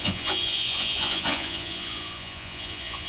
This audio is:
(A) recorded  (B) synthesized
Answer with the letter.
B